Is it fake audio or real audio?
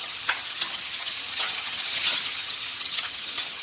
fake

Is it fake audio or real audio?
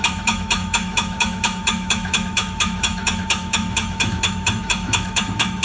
fake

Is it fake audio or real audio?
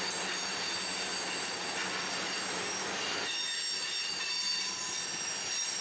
real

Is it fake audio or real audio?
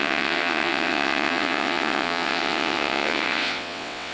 fake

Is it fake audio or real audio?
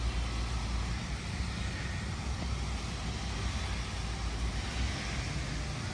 real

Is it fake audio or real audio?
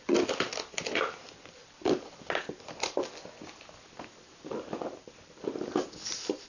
real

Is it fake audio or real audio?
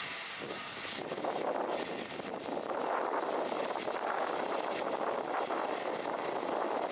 real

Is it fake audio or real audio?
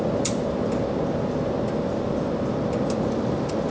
real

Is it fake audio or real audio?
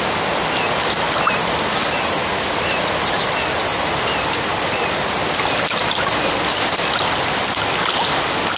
real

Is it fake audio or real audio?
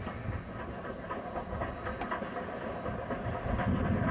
real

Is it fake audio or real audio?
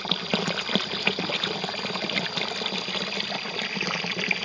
real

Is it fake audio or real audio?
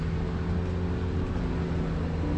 real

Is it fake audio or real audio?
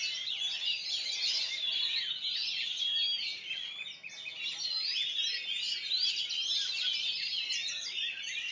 real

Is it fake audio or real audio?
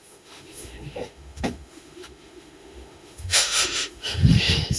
fake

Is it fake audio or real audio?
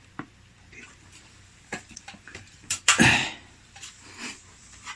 fake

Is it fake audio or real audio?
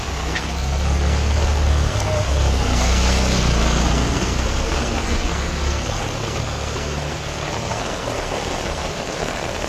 fake